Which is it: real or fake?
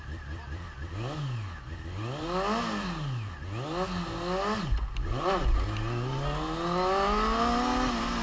real